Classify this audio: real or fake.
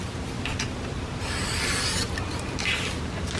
real